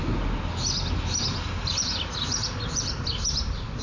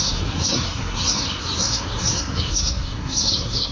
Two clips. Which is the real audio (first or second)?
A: first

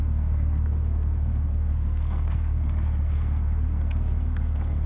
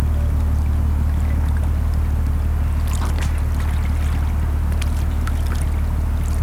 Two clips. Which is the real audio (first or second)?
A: second